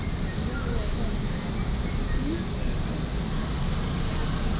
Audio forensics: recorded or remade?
recorded